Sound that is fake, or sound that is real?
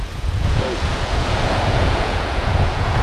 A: fake